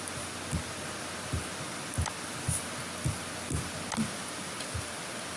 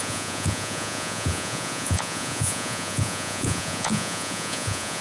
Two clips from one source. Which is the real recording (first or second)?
first